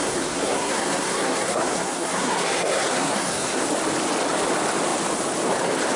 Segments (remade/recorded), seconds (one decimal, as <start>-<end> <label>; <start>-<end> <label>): 0.0-3.6 remade; 3.6-6.0 recorded

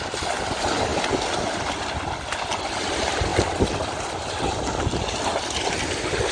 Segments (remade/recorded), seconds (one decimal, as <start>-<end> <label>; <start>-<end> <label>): 0.0-6.3 recorded

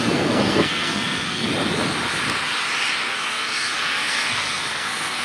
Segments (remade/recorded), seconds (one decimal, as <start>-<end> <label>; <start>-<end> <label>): 0.0-1.5 remade; 1.5-3.1 recorded; 3.1-5.2 remade

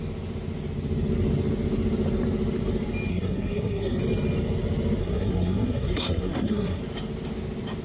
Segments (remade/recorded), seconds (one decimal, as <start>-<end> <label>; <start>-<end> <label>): 0.0-3.1 recorded; 3.1-4.0 remade; 4.0-5.0 recorded; 5.0-6.8 remade; 6.8-7.8 recorded

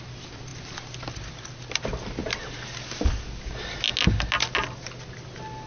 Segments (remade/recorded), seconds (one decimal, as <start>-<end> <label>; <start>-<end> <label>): 0.0-5.7 recorded